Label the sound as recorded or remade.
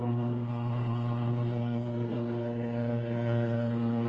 remade